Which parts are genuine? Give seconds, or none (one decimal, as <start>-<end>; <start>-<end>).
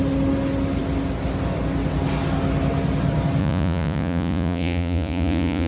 0.0-3.4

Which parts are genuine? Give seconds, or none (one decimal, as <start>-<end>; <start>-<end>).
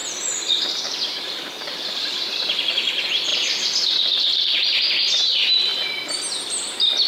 0.0-7.1